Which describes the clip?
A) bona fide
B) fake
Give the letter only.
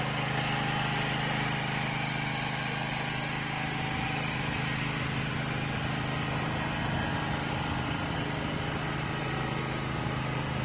A